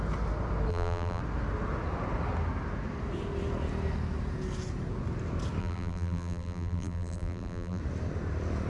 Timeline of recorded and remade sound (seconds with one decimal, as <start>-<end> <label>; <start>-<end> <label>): 0.0-0.7 recorded; 0.7-1.2 remade; 1.2-5.6 recorded; 5.6-7.8 remade; 7.8-8.7 recorded